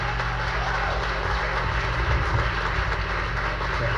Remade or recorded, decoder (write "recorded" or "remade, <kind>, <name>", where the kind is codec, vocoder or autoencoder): recorded